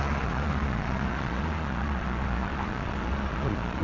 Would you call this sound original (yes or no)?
no